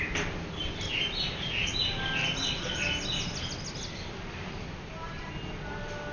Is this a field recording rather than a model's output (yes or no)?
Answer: yes